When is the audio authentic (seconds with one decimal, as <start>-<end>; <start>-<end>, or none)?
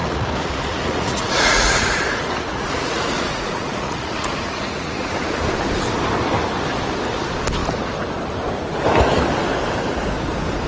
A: 5.1-10.7